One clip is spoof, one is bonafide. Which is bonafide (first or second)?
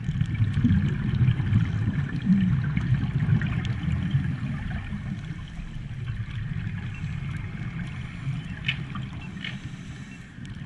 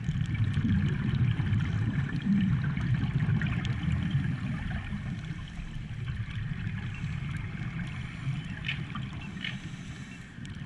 first